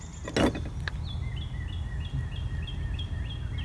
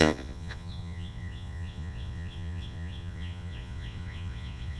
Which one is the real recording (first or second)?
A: first